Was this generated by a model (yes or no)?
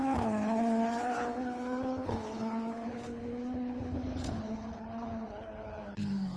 yes